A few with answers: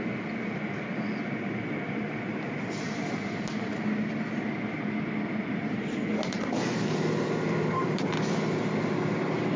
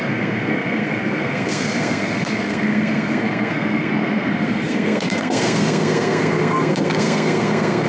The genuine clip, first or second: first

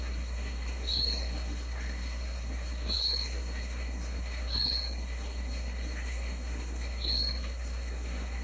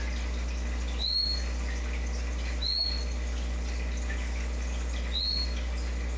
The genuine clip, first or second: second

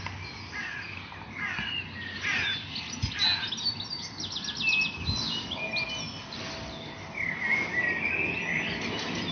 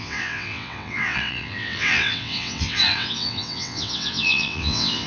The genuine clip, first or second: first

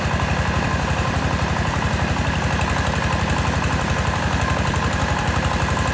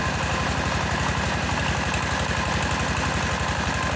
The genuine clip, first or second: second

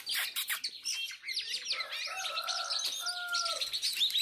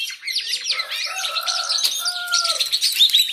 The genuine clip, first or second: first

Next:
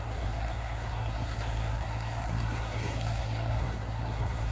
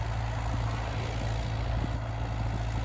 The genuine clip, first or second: second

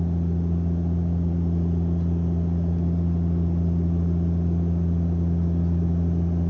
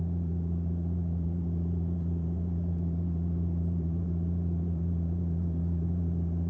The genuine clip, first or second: first